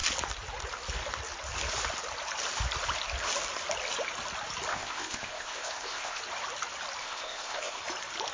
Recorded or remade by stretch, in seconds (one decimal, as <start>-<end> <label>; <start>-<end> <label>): 0.0-4.7 recorded; 4.7-6.2 remade; 6.2-7.0 recorded; 7.0-7.8 remade; 7.8-8.3 recorded